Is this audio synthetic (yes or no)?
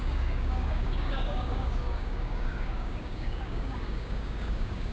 yes